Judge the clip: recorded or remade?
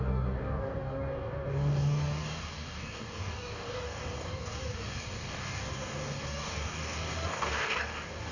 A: remade